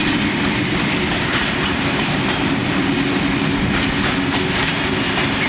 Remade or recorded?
recorded